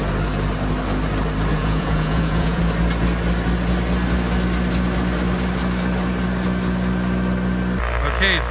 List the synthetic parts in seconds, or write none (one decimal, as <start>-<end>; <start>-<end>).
1.5-2.6